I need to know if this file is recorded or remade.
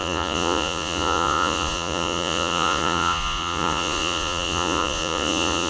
remade